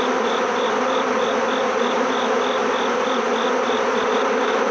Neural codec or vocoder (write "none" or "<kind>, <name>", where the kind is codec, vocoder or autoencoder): none